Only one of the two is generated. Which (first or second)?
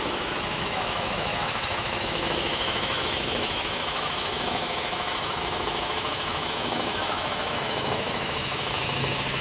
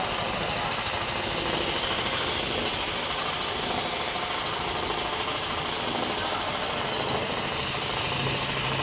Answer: first